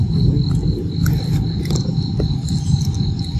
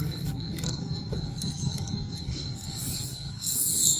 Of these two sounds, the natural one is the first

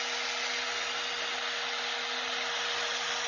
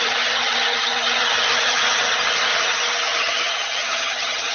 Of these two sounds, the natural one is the first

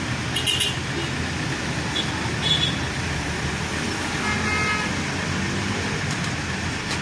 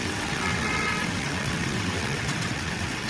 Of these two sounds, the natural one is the first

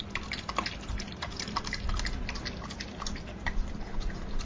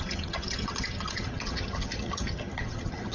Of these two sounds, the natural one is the first